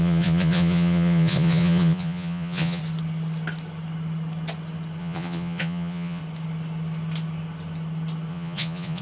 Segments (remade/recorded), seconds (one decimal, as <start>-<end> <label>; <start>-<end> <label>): 0.0-2.8 remade; 2.8-5.0 recorded; 5.0-6.2 remade; 6.2-8.3 recorded; 8.3-9.0 remade